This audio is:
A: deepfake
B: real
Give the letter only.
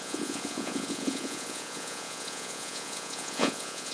A